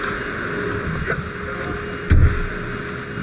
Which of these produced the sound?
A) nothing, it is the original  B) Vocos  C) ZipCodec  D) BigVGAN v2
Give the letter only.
A